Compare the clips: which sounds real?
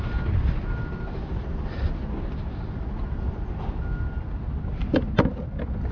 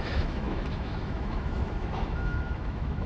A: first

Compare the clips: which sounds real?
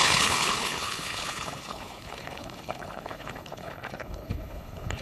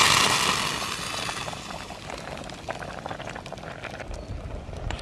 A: second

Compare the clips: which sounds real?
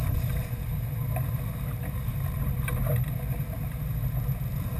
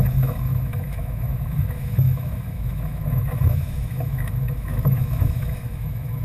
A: first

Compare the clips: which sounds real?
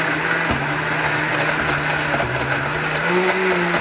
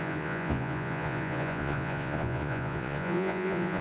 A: first